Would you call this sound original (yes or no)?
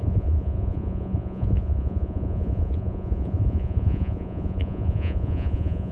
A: no